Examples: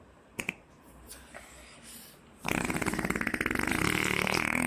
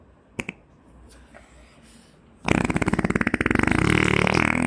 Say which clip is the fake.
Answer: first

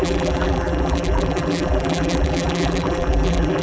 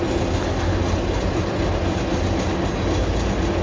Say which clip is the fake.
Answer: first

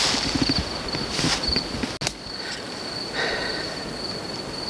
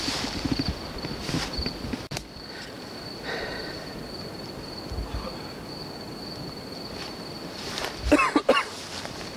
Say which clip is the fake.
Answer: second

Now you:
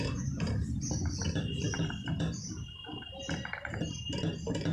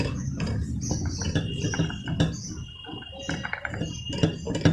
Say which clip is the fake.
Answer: first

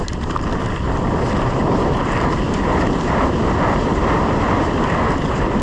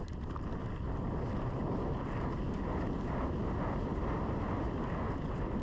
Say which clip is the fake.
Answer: first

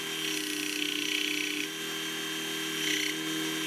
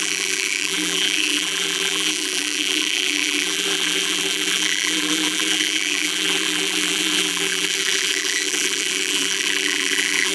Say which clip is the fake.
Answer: second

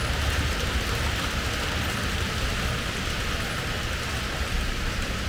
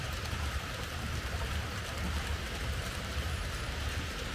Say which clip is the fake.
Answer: second